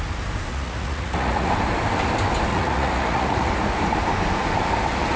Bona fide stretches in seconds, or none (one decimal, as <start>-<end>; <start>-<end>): 0.0-0.5; 1.5-2.5; 3.5-5.2